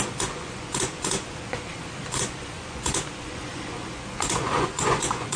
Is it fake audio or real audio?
fake